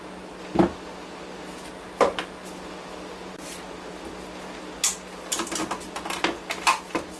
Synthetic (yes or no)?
no